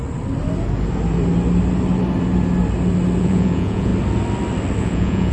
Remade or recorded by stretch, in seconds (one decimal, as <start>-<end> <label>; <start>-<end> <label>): 0.0-3.2 recorded; 3.2-3.9 remade; 3.9-4.8 recorded; 4.8-5.3 remade